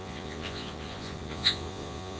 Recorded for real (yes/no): no